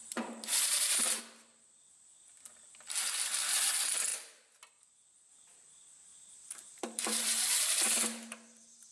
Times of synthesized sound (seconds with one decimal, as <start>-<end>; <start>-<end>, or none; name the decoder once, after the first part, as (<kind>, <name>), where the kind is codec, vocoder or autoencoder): 0.0-1.2 (vocoder, BigVGAN v2); 6.1-8.9